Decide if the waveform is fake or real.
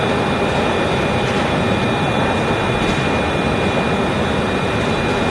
real